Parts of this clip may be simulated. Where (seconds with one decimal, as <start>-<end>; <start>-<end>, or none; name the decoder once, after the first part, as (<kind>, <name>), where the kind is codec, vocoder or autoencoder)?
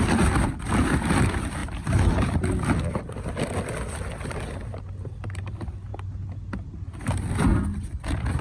none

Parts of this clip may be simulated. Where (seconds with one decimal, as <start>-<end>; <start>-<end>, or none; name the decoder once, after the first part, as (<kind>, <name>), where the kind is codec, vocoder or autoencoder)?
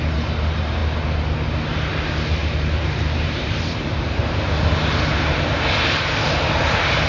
2.4-4.2 (vocoder, BigVGAN v2)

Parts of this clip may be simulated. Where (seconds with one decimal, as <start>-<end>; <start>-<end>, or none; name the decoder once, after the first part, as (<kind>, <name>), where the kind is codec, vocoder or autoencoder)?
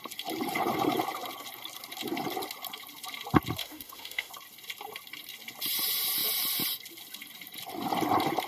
3.6-4.3 (autoencoder, DAC-VAE)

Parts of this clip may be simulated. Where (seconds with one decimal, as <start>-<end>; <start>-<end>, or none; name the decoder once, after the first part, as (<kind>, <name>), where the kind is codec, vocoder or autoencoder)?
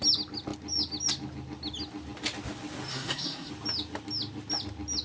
2.9-3.5 (codec, SNAC)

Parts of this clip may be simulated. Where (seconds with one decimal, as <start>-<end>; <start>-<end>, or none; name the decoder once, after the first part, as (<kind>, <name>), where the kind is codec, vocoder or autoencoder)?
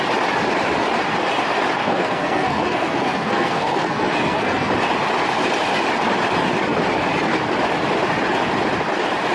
1.8-4.7 (codec, SNAC)